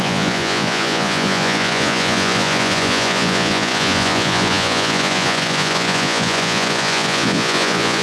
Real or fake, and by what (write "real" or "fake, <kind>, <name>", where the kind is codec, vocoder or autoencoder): fake, vocoder, Vocos